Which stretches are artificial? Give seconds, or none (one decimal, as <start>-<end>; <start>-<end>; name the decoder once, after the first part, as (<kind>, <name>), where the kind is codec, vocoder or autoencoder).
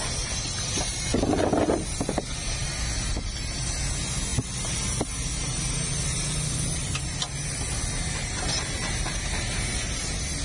none